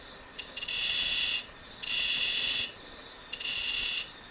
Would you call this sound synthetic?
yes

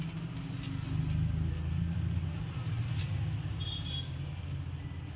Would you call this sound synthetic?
no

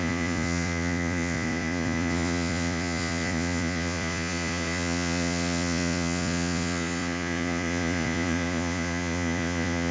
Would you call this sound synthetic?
yes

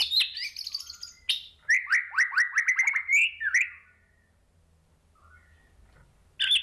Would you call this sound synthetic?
no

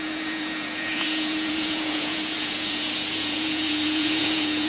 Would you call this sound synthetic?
yes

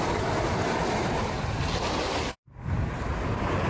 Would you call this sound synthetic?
no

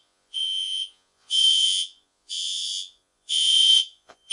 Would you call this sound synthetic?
yes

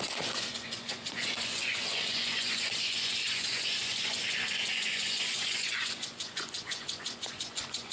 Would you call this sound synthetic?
yes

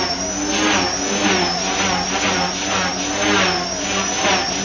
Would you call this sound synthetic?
no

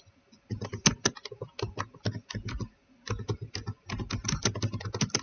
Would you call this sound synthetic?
no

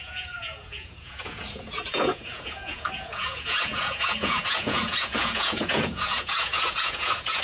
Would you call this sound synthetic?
yes